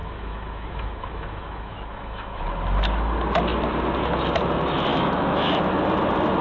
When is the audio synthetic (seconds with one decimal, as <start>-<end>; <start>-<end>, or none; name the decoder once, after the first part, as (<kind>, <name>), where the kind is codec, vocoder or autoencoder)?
0.0-2.4 (autoencoder, DAC-VAE); 4.9-5.6